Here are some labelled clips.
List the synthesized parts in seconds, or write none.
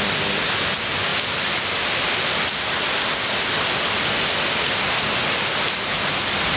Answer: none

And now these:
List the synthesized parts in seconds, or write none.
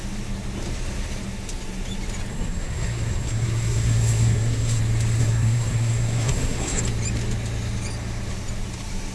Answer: 2.3-4.8 (codec, SNAC); 5.2-6.8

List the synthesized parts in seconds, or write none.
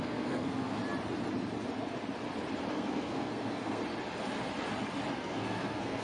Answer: 0.0-0.8 (codec, SNAC); 2.7-3.8; 5.1-6.0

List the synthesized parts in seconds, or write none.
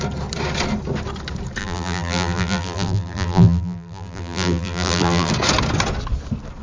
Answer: 1.6-5.3 (vocoder, BigVGAN v2)